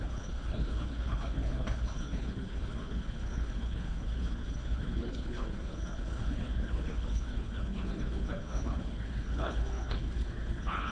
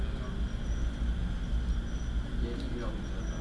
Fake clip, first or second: first